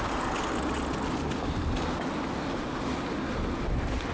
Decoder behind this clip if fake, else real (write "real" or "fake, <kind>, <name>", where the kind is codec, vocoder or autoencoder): real